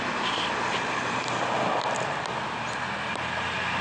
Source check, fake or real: real